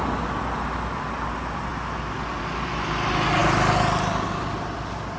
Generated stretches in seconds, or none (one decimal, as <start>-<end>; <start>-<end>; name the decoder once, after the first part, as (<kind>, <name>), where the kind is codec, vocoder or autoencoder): none